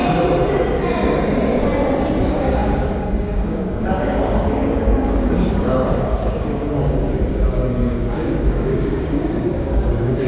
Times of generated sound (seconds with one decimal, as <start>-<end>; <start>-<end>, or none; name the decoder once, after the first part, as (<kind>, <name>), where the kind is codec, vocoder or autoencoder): 2.2-10.3 (codec, DAC)